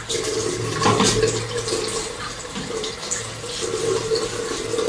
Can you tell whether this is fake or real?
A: real